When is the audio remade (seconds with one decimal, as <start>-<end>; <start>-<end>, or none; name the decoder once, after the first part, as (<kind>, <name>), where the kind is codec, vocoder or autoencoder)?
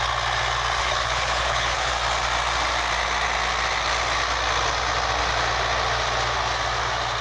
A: 0.8-1.9 (codec, HILCodec)